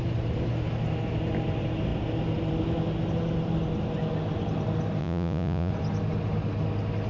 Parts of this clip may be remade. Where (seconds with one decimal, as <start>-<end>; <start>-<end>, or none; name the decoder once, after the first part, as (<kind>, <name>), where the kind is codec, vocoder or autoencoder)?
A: 5.0-5.7 (vocoder, Vocos)